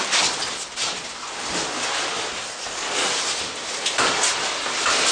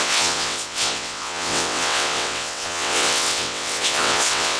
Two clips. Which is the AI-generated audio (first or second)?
second